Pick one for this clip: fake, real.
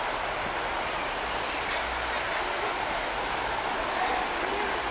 real